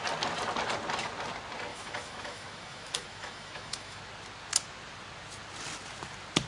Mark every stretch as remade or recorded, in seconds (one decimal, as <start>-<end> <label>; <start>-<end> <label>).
0.0-1.7 recorded; 1.7-4.0 remade; 4.0-6.5 recorded